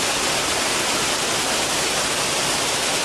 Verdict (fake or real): real